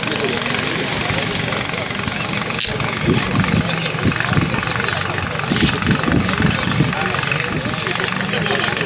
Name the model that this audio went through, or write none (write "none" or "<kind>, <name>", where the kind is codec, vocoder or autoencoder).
none